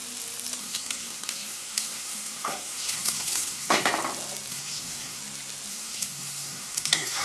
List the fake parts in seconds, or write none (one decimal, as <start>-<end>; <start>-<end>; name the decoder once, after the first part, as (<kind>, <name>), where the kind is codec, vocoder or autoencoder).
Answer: 0.6-3.9 (codec, SNAC); 4.5-5.2; 5.7-7.2